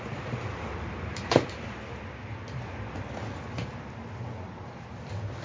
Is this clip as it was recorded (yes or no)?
yes